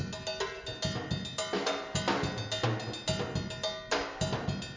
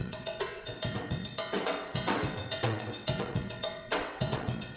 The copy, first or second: second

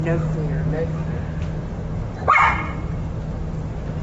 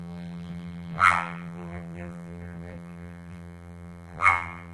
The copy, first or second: second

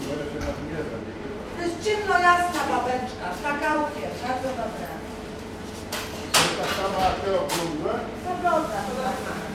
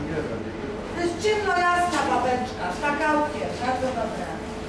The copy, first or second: first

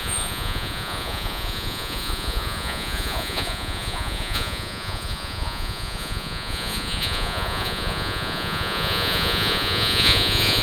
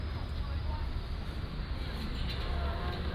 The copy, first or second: first